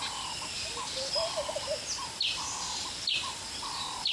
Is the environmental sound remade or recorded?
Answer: recorded